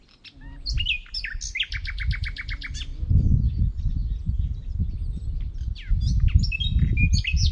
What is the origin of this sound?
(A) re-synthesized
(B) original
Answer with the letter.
B